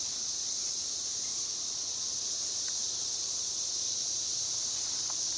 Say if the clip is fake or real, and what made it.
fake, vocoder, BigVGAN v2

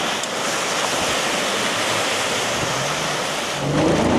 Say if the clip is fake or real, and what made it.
real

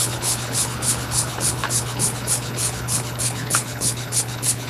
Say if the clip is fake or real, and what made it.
fake, codec, HILCodec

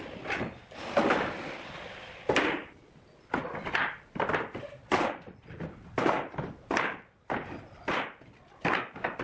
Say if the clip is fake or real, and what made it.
real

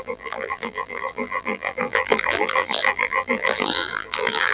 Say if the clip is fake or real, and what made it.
fake, vocoder, BigVGAN v2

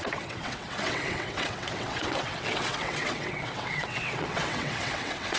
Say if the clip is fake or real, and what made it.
fake, vocoder, WaveNeXt